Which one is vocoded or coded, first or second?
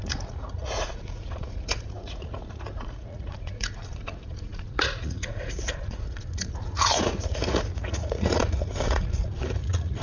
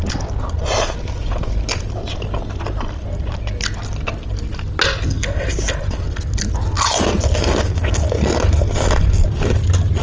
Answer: first